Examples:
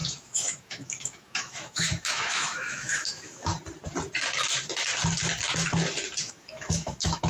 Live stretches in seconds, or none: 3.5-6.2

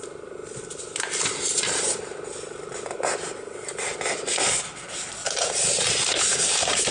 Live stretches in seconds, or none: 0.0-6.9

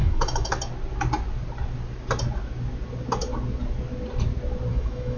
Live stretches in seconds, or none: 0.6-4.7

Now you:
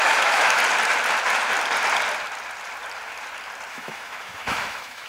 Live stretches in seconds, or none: 0.6-3.7

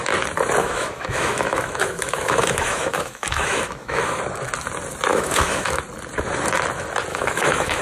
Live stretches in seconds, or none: 0.0-0.6; 4.2-5.1; 5.8-7.1

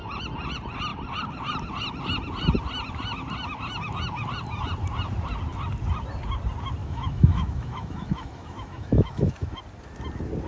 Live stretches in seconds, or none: 0.0-6.8; 9.6-10.5